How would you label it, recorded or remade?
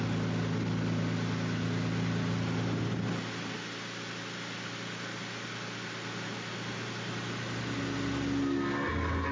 recorded